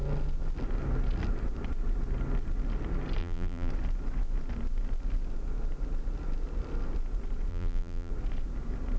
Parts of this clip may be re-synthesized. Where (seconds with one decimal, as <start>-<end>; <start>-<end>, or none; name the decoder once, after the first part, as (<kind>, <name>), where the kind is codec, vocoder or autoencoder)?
3.2-3.7 (vocoder, BigVGAN v2); 7.5-8.1